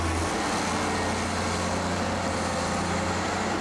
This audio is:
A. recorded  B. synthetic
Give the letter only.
A